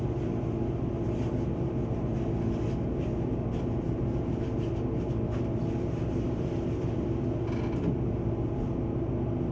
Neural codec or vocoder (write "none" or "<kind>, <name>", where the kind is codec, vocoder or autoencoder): none